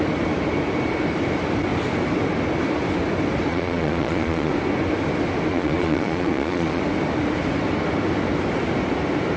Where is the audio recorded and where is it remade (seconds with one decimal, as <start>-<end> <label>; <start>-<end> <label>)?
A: 0.0-3.5 recorded; 3.5-4.5 remade; 4.5-5.5 recorded; 5.5-6.8 remade; 6.8-9.4 recorded